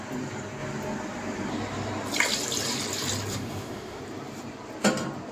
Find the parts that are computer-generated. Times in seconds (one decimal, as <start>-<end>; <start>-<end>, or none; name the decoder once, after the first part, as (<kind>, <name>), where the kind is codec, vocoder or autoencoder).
3.3-4.0 (autoencoder, DAC-VAE)